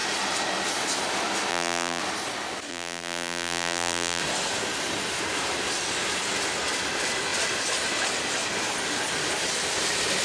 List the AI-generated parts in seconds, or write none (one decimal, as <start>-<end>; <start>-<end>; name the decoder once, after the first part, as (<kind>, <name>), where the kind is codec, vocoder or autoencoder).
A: 1.5-2.0 (vocoder, BigVGAN v2); 2.7-4.2